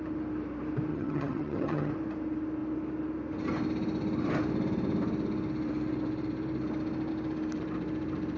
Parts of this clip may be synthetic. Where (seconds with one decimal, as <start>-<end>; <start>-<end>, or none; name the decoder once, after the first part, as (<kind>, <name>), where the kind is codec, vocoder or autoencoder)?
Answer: 0.9-1.9 (vocoder, HiFi-GAN)